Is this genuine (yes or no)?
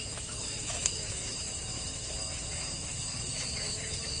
no